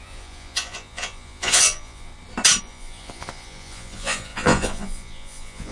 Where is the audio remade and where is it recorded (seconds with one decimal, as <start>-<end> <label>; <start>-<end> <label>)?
0.0-2.1 remade; 2.1-2.6 recorded; 2.6-5.7 remade